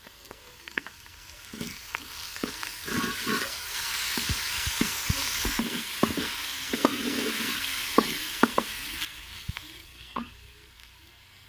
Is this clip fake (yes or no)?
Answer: yes